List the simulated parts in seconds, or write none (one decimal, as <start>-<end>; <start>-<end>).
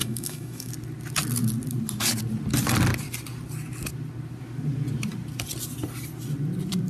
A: 0.0-0.7